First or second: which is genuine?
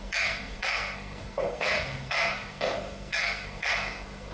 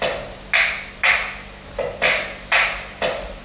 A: second